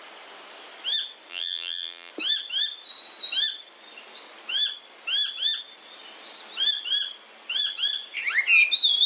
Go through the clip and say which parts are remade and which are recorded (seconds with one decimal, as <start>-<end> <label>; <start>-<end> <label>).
0.0-1.3 recorded; 1.3-2.1 remade; 2.1-9.1 recorded